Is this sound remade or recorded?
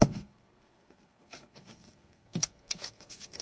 remade